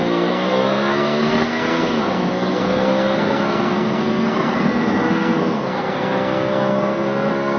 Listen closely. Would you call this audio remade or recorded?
remade